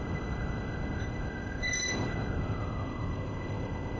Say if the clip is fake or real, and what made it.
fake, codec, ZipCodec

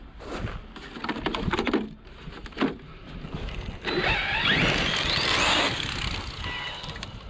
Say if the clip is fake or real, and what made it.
real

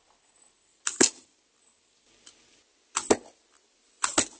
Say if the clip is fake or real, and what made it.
real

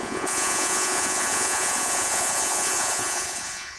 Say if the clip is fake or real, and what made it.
fake, vocoder, Vocos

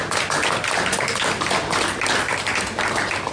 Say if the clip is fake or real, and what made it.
real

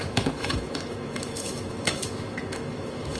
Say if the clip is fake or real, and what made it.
fake, autoencoder, DAC-VAE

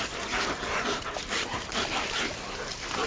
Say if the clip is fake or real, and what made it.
real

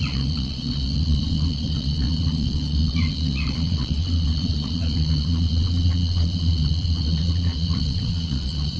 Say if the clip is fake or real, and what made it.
fake, vocoder, Vocos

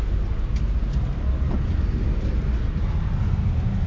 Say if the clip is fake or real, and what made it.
real